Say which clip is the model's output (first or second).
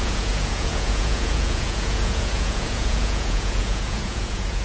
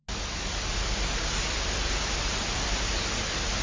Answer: first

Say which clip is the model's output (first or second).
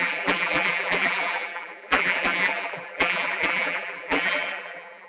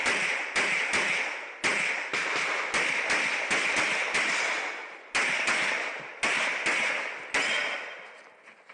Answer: first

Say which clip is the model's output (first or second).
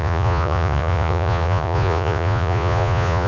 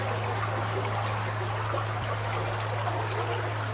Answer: first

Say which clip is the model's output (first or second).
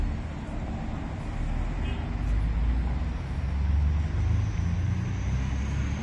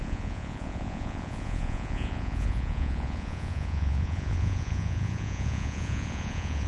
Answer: second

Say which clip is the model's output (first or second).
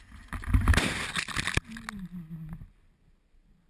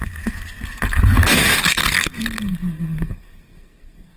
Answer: second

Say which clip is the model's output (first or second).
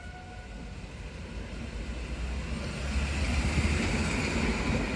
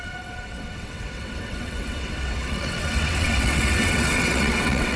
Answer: second